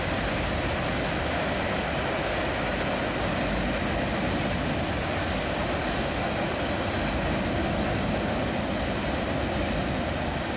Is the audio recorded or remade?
recorded